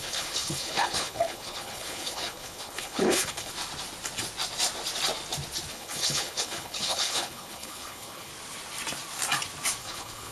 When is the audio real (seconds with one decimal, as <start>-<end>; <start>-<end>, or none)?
3.5-5.7; 8.3-9.8